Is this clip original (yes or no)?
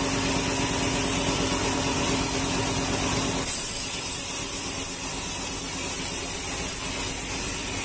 yes